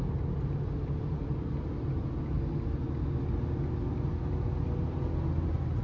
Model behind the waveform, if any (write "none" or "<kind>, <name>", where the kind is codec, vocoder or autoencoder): none